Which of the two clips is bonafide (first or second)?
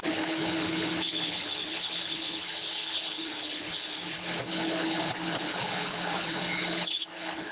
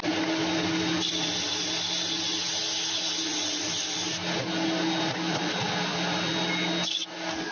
second